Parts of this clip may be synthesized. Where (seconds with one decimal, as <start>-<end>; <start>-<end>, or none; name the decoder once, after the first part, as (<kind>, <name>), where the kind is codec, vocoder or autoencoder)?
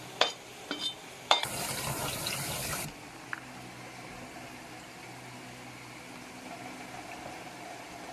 0.0-8.1 (vocoder, BigVGAN v2)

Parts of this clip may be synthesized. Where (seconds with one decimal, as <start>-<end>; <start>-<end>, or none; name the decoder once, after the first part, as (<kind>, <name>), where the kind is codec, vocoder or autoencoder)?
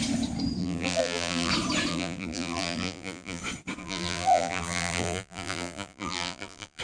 0.6-1.5 (vocoder, BigVGAN v2); 1.9-3.4; 3.8-6.8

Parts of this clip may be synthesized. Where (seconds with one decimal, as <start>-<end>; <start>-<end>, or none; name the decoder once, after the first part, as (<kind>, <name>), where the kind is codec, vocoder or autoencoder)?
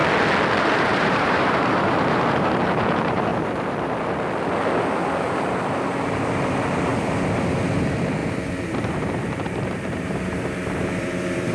0.6-3.3 (vocoder, BigVGAN v2); 6.4-6.9; 7.6-8.2; 8.8-11.5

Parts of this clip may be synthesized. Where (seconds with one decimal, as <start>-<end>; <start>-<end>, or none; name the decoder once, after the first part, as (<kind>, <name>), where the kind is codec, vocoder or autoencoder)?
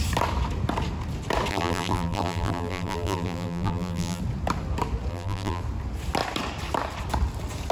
1.5-4.2 (vocoder, BigVGAN v2); 5.1-5.6